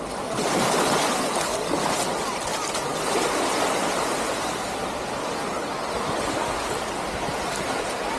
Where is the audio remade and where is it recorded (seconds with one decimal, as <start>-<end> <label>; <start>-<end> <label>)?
0.0-8.2 recorded